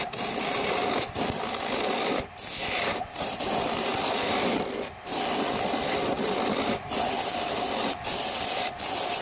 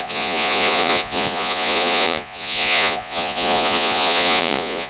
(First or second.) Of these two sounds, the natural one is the first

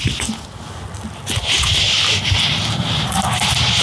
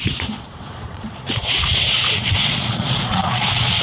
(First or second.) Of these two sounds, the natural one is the first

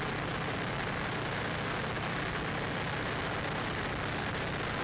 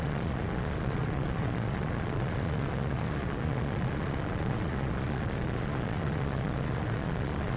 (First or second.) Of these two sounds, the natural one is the first